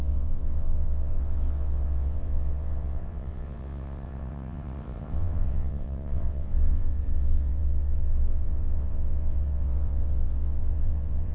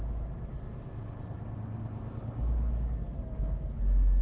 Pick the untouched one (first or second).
second